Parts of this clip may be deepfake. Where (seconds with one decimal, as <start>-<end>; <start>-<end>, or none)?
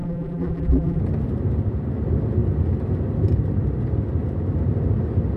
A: 0.0-1.0